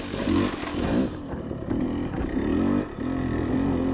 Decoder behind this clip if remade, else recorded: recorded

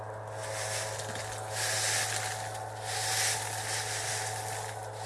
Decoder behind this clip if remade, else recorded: recorded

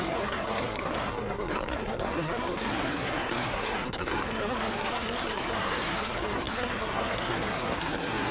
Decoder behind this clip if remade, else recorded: remade, codec, SNAC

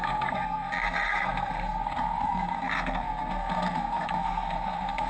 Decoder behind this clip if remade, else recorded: remade, codec, SNAC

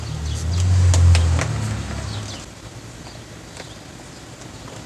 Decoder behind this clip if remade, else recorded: recorded